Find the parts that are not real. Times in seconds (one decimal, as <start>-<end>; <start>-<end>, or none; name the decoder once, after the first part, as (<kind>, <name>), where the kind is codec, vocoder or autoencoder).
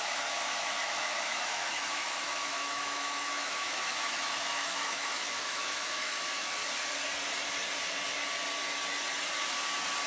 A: 0.0-6.6 (autoencoder, DAC-VAE)